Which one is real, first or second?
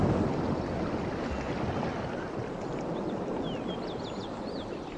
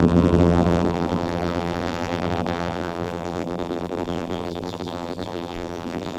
first